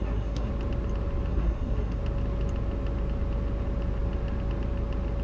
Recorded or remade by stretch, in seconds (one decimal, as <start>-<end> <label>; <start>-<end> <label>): 0.0-0.5 remade; 0.5-1.3 recorded; 1.3-2.0 remade; 2.0-5.2 recorded